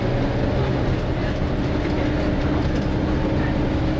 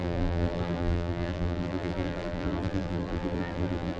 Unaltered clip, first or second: first